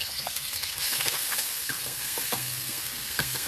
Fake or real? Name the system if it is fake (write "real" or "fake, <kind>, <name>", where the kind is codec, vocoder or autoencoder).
fake, codec, SNAC